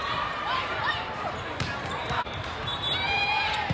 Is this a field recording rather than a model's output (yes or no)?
no